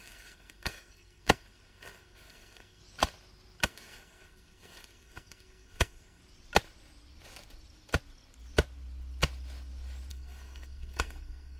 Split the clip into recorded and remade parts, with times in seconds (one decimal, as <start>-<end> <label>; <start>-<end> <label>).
0.0-2.8 remade; 2.8-3.6 recorded; 3.6-6.2 remade; 6.2-10.1 recorded; 10.1-11.6 remade